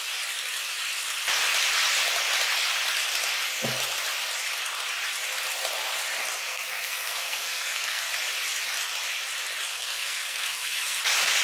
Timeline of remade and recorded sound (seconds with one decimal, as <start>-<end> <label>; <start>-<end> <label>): 0.0-6.4 recorded; 6.4-8.1 remade; 8.1-9.7 recorded; 9.7-11.0 remade; 11.0-11.4 recorded